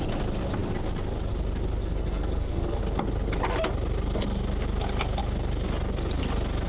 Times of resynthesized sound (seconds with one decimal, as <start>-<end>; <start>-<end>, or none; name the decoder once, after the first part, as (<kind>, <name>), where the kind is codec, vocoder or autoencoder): 1.8-2.8 (codec, SNAC)